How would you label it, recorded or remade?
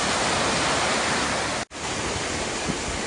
recorded